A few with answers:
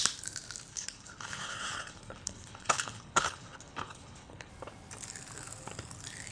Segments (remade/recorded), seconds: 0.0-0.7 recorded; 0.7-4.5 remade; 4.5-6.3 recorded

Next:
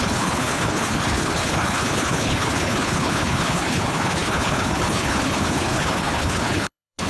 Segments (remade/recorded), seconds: 0.0-7.1 remade

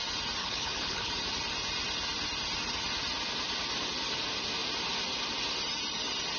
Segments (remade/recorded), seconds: 0.0-0.4 recorded; 0.4-1.1 remade; 1.1-6.4 recorded

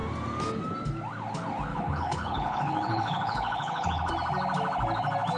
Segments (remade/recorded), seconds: 0.0-1.7 recorded; 1.7-4.1 remade; 4.1-5.4 recorded

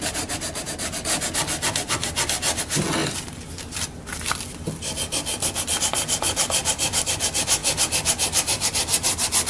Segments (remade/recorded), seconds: 0.0-9.5 recorded

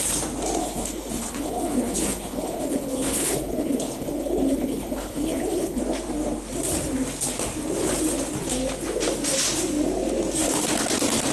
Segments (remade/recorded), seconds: 0.0-0.6 recorded; 0.6-5.8 remade; 5.8-11.3 recorded

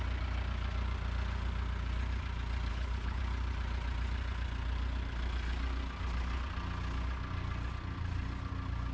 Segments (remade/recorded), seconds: 0.0-2.7 recorded; 2.7-3.2 remade; 3.2-8.9 recorded

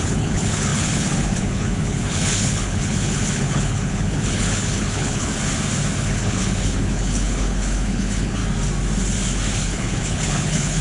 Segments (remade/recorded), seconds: 0.0-5.3 remade; 5.3-6.0 recorded; 6.0-8.4 remade; 8.4-9.6 recorded; 9.6-10.8 remade